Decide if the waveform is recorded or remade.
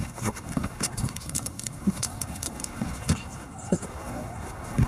remade